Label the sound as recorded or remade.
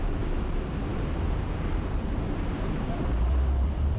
recorded